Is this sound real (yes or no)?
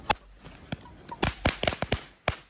yes